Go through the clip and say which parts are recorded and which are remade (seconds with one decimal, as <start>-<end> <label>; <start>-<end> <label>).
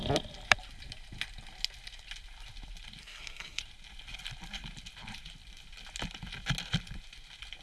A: 0.0-3.0 recorded; 3.0-3.6 remade; 3.6-7.6 recorded